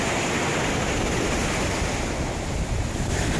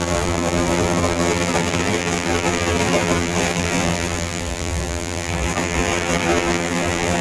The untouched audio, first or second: first